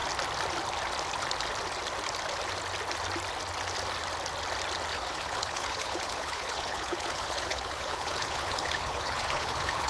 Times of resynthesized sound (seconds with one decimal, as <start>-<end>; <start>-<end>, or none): 4.9-9.9